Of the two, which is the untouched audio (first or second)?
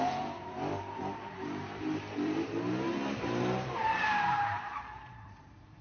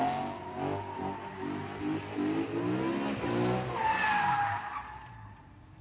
second